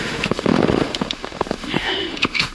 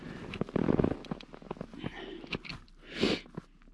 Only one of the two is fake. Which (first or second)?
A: first